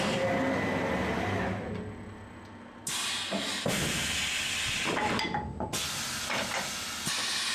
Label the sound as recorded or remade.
recorded